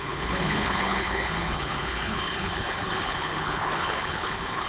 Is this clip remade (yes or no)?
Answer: yes